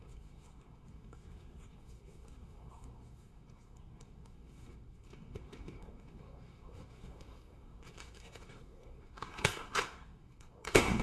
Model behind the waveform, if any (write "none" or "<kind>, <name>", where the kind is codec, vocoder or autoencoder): codec, SNAC